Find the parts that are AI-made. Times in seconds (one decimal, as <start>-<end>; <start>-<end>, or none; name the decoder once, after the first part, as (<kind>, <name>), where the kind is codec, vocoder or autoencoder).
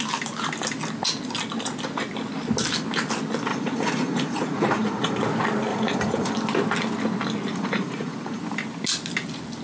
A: 3.5-5.2 (vocoder, Vocos); 5.7-6.3; 7.5-8.4